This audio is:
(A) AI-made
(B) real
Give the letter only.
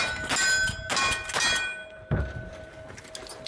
B